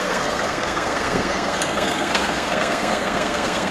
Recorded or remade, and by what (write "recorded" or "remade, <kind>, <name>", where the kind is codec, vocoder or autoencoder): remade, codec, SNAC